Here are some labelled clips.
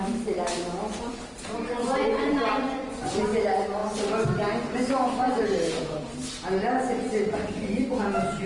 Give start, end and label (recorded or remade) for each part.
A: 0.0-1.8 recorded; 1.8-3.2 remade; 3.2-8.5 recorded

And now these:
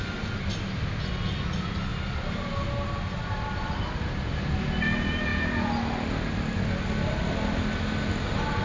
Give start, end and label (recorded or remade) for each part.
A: 0.0-8.6 recorded

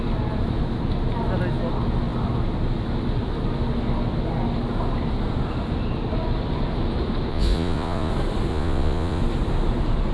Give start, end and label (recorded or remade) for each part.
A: 0.0-7.3 recorded; 7.3-8.1 remade; 8.1-8.5 recorded; 8.5-9.2 remade; 9.2-10.1 recorded

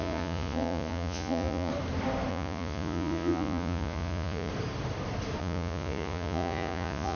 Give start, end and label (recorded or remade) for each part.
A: 0.0-1.7 remade; 1.7-2.3 recorded; 2.3-4.5 remade; 4.5-5.4 recorded; 5.4-7.2 remade

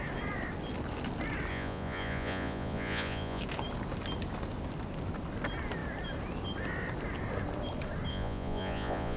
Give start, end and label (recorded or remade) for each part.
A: 0.0-1.5 recorded; 1.5-3.4 remade; 3.4-8.1 recorded; 8.1-9.2 remade

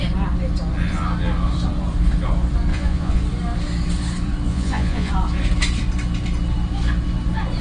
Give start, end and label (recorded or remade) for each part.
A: 0.0-2.7 recorded; 2.7-3.2 remade; 3.2-4.5 recorded; 4.5-5.1 remade; 5.1-7.6 recorded

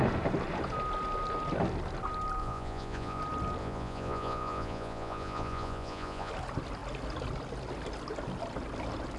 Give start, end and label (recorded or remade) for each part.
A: 0.0-2.4 recorded; 2.4-3.2 remade; 3.2-3.6 recorded; 3.6-6.3 remade; 6.3-9.2 recorded